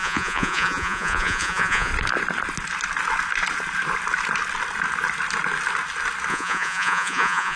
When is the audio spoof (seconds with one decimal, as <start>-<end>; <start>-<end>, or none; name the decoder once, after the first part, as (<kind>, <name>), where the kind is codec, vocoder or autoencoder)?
0.0-1.9 (vocoder, Vocos); 6.3-7.6